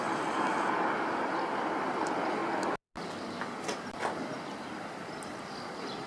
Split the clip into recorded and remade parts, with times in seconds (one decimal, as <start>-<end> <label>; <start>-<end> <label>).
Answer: 0.0-2.4 remade; 2.4-3.8 recorded; 3.8-6.1 remade